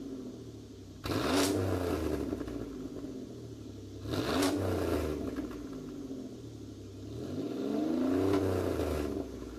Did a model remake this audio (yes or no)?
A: no